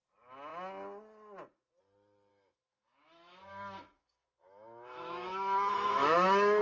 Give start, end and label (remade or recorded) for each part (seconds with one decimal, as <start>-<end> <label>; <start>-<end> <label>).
0.0-2.3 recorded; 2.3-6.6 remade